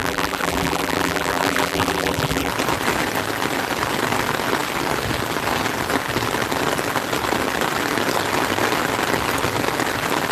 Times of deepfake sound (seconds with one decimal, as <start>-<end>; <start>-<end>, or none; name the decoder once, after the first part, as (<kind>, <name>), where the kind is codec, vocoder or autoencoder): 0.0-2.5 (vocoder, BigVGAN v2)